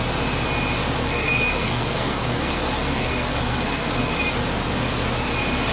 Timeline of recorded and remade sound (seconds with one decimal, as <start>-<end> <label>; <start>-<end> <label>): 0.0-1.0 recorded; 1.0-4.2 remade; 4.2-5.7 recorded